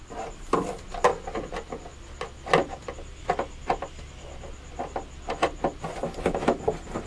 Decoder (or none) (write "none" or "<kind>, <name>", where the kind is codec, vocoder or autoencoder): none